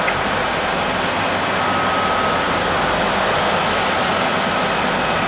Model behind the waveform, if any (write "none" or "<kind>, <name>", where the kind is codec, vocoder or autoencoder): none